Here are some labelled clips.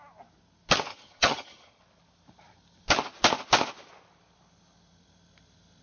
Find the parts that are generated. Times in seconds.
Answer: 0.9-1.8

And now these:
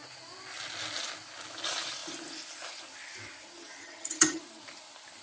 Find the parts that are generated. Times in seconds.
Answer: 3.8-4.4

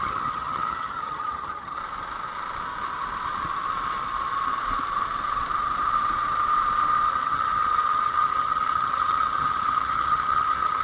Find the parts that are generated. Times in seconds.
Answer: 0.0-1.8; 7.1-10.8

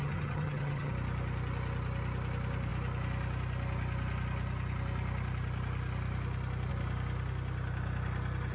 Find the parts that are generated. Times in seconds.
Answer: 0.0-0.9

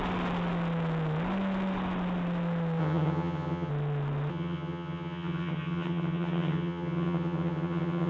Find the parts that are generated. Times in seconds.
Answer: 2.8-3.7; 4.3-8.1

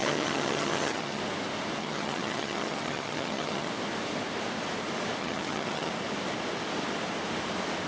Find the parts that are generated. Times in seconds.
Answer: 0.0-1.2; 1.8-3.7; 5.2-5.9